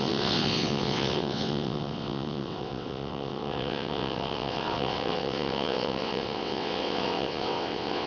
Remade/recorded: remade